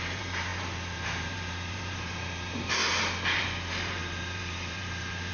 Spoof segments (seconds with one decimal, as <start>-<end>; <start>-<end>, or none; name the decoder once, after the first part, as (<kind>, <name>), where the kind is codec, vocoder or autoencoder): 0.0-2.8 (vocoder, BigVGAN v2); 3.4-5.3